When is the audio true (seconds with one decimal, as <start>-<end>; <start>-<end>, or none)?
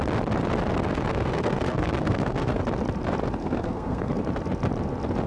0.0-1.1; 2.6-3.4; 4.1-5.3